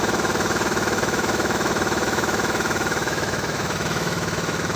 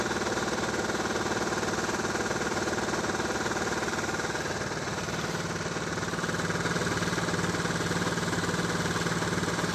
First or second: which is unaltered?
second